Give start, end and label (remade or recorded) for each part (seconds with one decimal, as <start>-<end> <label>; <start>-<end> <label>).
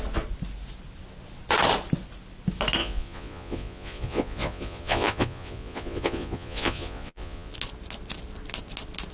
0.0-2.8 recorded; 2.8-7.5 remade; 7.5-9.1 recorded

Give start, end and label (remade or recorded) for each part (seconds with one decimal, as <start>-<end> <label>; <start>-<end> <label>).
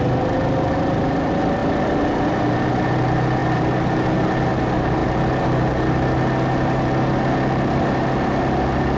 0.0-9.0 recorded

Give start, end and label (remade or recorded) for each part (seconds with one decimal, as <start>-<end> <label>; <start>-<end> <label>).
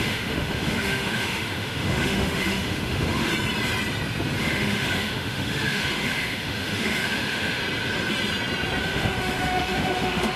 0.0-3.3 remade; 3.3-4.4 recorded; 4.4-7.6 remade; 7.6-8.8 recorded; 8.8-10.4 remade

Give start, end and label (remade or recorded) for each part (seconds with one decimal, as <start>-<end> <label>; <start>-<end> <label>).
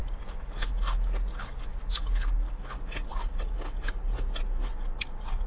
0.0-5.5 recorded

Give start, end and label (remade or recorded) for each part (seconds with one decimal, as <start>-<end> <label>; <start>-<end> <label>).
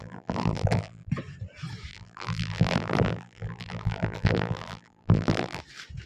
0.0-1.1 remade; 1.1-1.9 recorded; 1.9-5.6 remade; 5.6-6.1 recorded